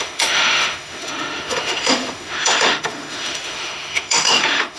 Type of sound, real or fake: fake